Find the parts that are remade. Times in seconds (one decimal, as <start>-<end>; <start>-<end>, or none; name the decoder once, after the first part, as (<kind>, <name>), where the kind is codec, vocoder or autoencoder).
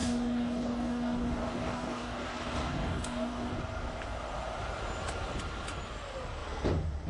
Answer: 0.0-3.5 (codec, DAC)